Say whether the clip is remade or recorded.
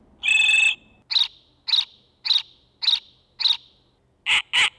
recorded